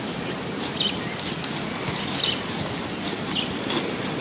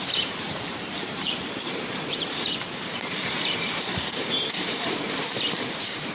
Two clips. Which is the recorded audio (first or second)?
first